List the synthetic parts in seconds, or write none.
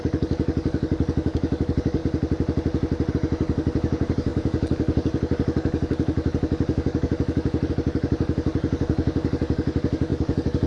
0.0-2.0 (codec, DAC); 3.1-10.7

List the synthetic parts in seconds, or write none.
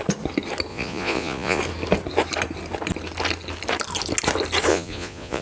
0.7-1.6 (vocoder, Vocos); 4.7-5.4